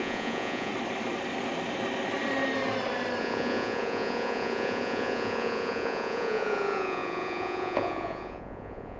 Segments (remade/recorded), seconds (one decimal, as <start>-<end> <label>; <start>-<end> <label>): 0.0-0.7 remade; 0.7-3.2 recorded; 3.2-9.0 remade